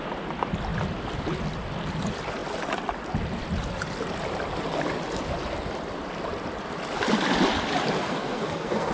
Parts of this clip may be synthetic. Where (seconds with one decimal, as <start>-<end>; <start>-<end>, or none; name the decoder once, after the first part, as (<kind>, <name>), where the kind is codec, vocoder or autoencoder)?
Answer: 8.0-8.9 (codec, SNAC)

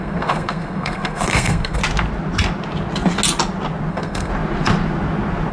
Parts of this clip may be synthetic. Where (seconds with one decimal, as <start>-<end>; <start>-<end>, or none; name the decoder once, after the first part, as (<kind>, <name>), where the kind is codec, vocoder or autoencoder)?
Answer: 0.0-1.8 (codec, SNAC); 3.9-4.3